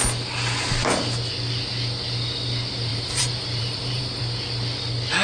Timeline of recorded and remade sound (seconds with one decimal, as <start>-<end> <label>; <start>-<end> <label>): 0.0-2.9 recorded; 2.9-4.2 remade; 4.2-5.2 recorded